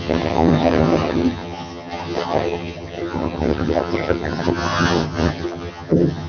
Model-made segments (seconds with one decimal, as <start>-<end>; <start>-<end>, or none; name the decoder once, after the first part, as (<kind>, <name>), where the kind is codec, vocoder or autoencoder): 0.0-6.3 (vocoder, HiFi-GAN)